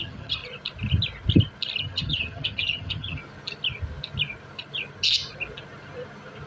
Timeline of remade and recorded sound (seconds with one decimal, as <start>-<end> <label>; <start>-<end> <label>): 0.0-0.4 remade; 0.4-1.8 recorded; 1.8-3.2 remade; 3.2-6.5 recorded